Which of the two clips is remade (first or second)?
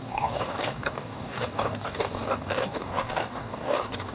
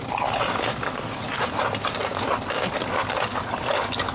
first